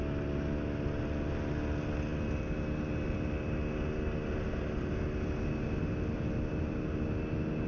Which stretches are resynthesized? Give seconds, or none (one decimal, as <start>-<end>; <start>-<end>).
none